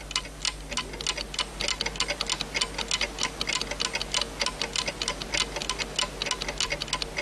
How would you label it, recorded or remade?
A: recorded